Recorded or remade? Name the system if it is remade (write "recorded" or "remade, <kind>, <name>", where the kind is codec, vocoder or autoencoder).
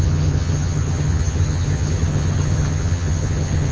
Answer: remade, vocoder, HiFi-GAN